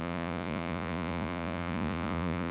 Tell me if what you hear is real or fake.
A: fake